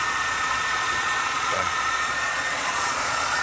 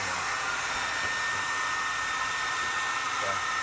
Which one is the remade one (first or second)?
first